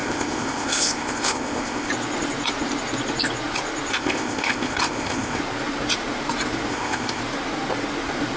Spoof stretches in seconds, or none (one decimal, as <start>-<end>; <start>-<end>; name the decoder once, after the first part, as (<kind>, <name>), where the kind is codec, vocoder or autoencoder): 0.0-1.9 (codec, ZipCodec); 3.9-5.4; 6.7-7.2